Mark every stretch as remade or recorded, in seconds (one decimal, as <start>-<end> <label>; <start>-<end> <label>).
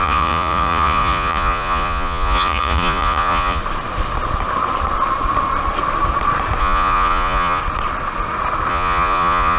0.0-3.6 remade; 3.6-6.6 recorded; 6.6-7.6 remade; 7.6-8.7 recorded; 8.7-9.6 remade